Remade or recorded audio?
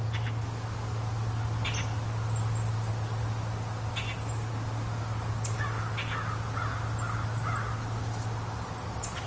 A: recorded